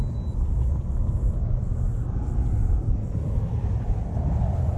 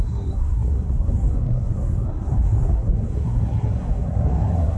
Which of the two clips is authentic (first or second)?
first